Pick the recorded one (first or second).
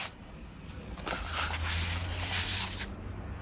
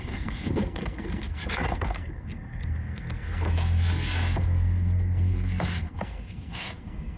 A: first